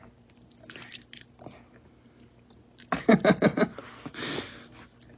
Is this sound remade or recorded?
recorded